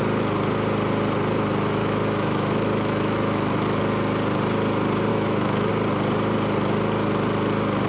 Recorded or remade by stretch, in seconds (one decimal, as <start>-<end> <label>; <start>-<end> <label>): 0.0-1.8 recorded; 1.8-3.8 remade; 3.8-5.1 recorded; 5.1-5.7 remade; 5.7-7.9 recorded